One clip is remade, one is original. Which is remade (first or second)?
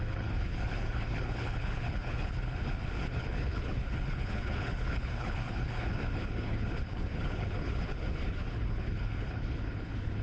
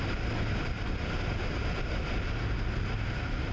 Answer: first